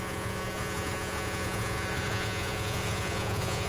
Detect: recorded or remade remade